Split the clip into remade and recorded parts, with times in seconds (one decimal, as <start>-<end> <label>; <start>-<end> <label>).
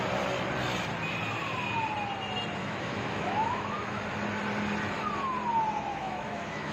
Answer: 0.0-2.6 recorded; 2.6-4.0 remade; 4.0-5.9 recorded; 5.9-6.7 remade